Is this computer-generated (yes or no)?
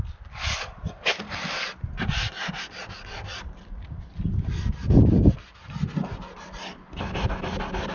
no